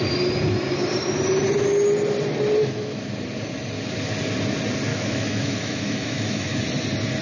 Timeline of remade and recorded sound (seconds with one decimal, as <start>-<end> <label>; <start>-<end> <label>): 0.0-2.6 recorded; 2.6-3.1 remade; 3.1-4.9 recorded; 4.9-6.6 remade; 6.6-7.2 recorded

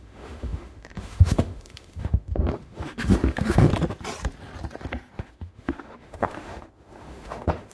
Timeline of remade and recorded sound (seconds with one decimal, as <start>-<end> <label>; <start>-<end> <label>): 0.0-3.7 remade; 3.7-5.2 recorded; 5.2-7.7 remade

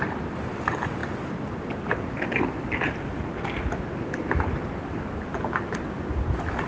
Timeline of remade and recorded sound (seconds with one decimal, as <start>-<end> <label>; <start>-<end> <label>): 0.0-6.7 recorded

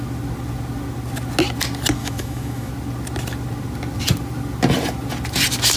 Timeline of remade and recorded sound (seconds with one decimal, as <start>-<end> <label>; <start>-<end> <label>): 0.0-2.0 recorded; 2.0-2.7 remade; 2.7-5.8 recorded

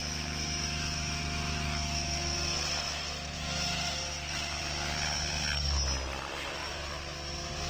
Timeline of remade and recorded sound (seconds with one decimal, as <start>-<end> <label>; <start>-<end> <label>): 0.0-4.6 remade; 4.6-7.7 recorded

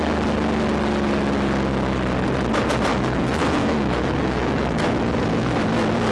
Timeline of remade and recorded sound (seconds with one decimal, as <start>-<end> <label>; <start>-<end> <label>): 0.0-2.9 recorded; 2.9-5.5 remade; 5.5-6.1 recorded

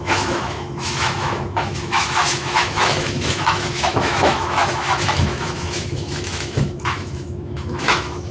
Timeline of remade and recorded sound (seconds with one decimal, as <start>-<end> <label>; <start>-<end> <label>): 0.0-8.3 remade

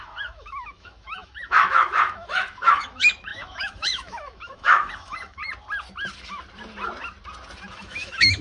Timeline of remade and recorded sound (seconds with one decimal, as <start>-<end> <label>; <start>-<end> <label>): 0.0-5.4 remade; 5.4-7.7 recorded; 7.7-8.4 remade